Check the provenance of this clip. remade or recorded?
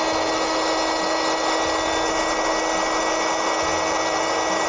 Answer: recorded